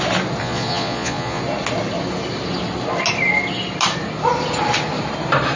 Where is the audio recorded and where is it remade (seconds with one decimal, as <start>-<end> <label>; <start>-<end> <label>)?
0.0-0.4 recorded; 0.4-1.4 remade; 1.4-5.6 recorded